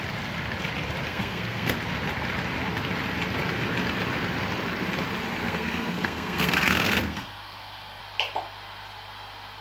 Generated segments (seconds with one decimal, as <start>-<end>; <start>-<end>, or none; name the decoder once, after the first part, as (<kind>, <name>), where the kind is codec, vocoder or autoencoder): 1.1-1.7 (codec, SNAC); 5.4-8.0